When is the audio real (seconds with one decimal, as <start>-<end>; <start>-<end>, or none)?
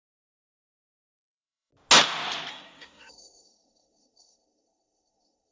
1.7-2.5